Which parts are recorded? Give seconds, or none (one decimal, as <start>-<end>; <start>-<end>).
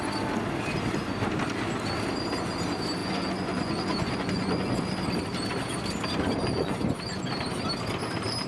0.0-3.0; 4.8-6.4; 7.3-8.5